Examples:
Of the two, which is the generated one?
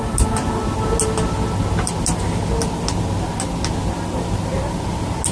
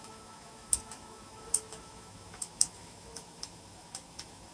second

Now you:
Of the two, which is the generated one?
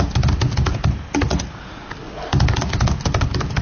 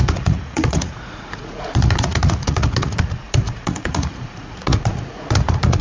second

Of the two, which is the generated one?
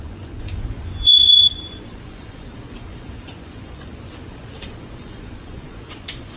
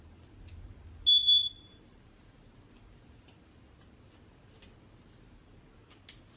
first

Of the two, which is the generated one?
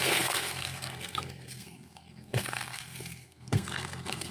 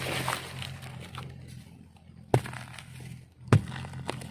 first